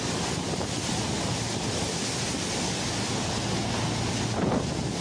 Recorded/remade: recorded